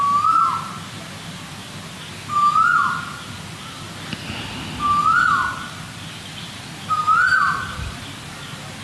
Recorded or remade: recorded